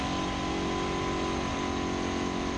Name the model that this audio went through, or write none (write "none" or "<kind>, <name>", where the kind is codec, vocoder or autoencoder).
none